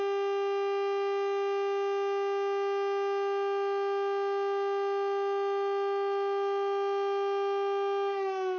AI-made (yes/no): no